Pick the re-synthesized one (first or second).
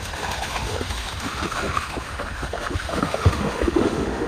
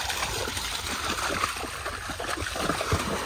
first